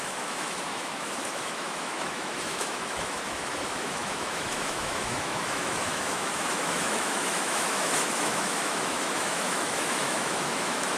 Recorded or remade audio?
remade